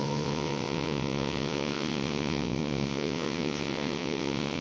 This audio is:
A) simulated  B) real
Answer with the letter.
A